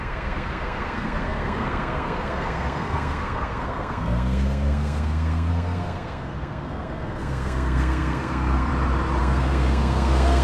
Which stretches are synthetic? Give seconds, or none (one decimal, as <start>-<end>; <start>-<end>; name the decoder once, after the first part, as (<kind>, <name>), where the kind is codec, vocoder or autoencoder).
0.0-8.7 (codec, SNAC); 9.2-10.4